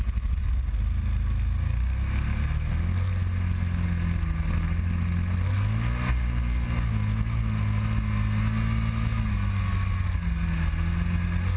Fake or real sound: real